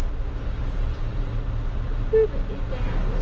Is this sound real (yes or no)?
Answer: yes